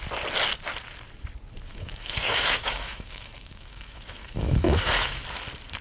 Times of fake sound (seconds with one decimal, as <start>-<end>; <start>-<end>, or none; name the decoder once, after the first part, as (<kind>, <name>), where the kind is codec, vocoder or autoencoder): 1.7-5.2 (autoencoder, DAC-VAE)